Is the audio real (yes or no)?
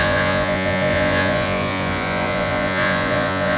no